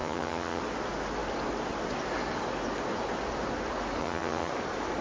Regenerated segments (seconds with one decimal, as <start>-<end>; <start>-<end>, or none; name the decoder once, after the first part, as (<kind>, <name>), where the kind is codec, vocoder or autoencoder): 0.0-0.6 (vocoder, HiFi-GAN); 4.0-4.5